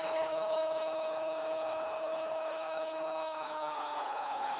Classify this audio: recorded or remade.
remade